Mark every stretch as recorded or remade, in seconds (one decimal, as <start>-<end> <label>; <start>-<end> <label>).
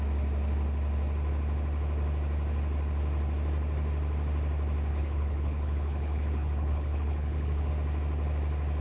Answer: 0.0-4.9 recorded; 4.9-7.7 remade; 7.7-8.8 recorded